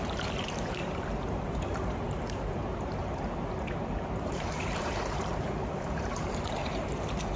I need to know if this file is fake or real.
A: fake